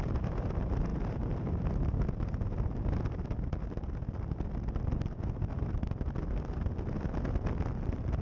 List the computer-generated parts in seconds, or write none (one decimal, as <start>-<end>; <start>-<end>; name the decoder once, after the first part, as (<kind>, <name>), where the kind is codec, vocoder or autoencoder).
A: none

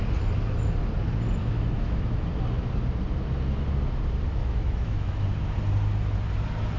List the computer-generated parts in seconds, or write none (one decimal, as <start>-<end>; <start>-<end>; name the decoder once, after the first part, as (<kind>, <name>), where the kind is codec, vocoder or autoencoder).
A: 1.4-2.3 (autoencoder, DAC-VAE); 4.4-5.2

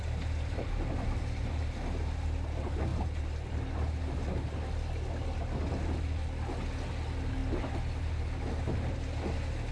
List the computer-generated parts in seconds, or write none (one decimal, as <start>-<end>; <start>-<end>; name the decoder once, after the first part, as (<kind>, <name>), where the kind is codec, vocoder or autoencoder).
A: none

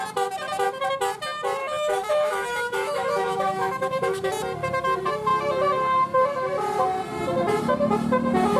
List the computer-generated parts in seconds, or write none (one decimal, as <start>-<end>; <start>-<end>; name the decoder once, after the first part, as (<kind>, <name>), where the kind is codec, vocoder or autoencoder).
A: 1.6-4.3 (autoencoder, DAC-VAE)